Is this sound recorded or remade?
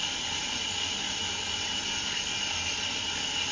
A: recorded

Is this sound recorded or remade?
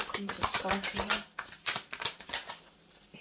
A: remade